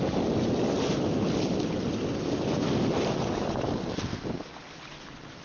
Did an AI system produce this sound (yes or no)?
no